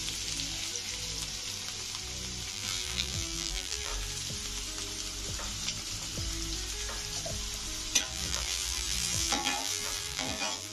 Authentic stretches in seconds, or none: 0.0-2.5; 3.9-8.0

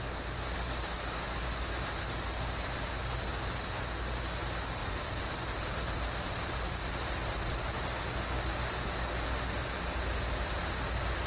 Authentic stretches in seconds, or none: 0.0-4.8; 7.8-11.3